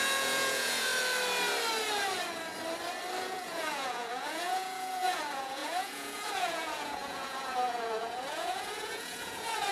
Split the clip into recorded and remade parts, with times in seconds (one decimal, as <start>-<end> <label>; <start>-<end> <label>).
0.0-0.9 remade; 0.9-3.2 recorded; 3.2-9.7 remade